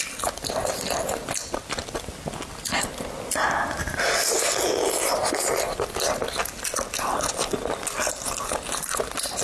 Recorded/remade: recorded